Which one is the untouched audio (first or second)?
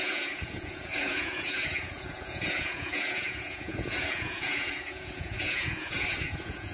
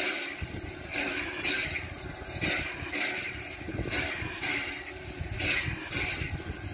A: second